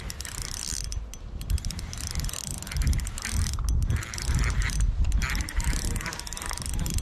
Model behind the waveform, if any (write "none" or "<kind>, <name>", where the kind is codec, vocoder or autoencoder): none